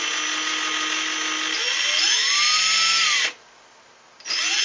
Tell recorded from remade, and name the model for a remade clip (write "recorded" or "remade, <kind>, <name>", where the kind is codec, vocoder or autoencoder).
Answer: recorded